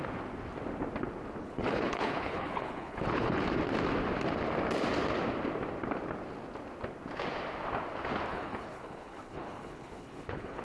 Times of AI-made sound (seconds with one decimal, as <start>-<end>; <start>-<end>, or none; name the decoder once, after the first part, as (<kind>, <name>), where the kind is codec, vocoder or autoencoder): 1.4-3.4 (codec, HILCodec); 8.3-10.6

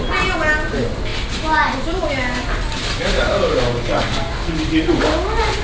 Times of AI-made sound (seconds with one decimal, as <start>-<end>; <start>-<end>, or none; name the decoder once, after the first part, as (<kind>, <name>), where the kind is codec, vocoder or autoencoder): 3.9-4.5 (codec, SNAC)

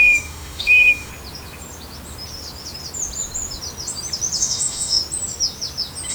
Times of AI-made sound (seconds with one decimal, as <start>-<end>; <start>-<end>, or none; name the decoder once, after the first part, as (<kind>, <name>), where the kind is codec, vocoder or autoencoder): 0.0-1.1 (autoencoder, DAC-VAE); 4.4-5.0

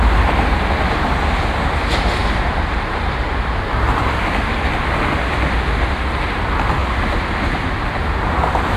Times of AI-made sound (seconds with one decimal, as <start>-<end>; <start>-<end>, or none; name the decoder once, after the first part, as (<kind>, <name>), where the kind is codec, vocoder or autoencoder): 2.2-4.3 (vocoder, BigVGAN v2)

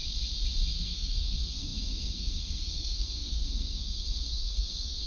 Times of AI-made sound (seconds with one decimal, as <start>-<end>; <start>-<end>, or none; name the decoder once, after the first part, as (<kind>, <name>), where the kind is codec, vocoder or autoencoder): 0.7-5.1 (codec, SNAC)

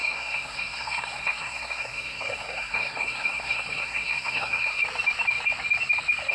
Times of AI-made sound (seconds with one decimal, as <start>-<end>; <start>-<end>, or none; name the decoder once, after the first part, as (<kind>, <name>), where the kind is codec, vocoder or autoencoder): 0.0-4.8 (codec, SNAC)

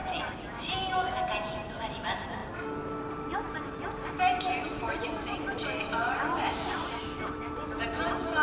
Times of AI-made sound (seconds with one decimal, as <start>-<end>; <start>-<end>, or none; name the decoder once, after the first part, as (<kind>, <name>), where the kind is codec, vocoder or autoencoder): 1.8-2.4 (vocoder, BigVGAN v2); 3.1-8.4